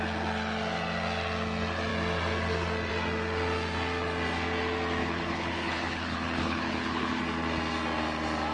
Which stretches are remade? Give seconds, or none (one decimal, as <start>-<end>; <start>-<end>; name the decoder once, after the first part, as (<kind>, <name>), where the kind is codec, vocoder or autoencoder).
5.0-7.2 (codec, HILCodec)